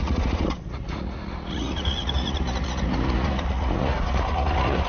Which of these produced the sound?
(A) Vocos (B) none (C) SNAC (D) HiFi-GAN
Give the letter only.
A